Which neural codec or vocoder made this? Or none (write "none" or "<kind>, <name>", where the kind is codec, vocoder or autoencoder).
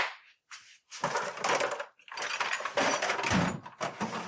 none